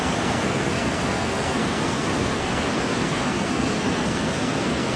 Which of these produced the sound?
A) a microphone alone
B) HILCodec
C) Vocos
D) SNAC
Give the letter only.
D